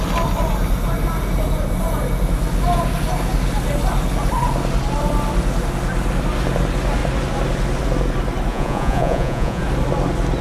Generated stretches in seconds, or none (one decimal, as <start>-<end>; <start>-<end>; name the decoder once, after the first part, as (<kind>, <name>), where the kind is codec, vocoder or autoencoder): 8.5-9.6 (vocoder, Vocos)